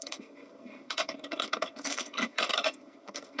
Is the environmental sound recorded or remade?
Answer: remade